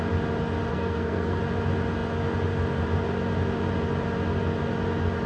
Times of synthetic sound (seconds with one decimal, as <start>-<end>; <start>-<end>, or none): 0.7-1.4